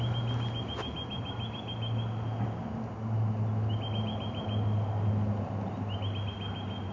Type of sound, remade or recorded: recorded